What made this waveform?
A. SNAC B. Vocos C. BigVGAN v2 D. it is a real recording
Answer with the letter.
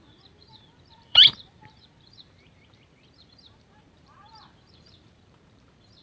C